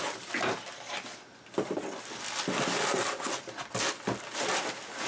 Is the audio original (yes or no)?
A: yes